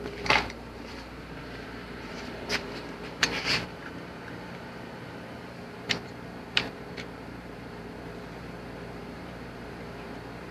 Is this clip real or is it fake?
fake